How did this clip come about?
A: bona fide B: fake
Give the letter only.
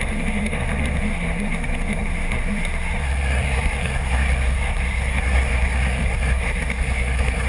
B